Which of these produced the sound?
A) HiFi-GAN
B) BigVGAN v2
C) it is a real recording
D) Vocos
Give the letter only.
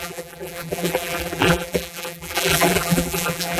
B